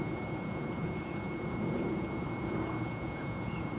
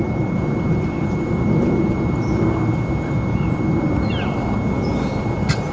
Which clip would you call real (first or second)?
second